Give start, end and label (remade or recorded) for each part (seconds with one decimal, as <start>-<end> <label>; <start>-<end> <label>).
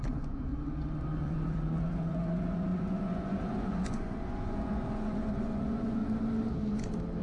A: 0.0-0.5 remade; 0.5-1.2 recorded; 1.2-6.0 remade; 6.0-7.2 recorded